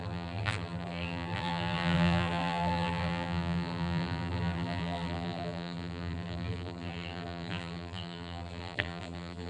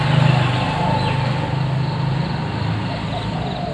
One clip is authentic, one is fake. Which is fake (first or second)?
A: first